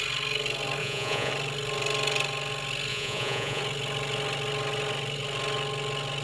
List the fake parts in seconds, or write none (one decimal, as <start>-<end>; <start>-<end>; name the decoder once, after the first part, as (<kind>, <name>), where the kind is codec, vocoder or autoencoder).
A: 0.8-1.3 (vocoder, Vocos); 2.9-3.6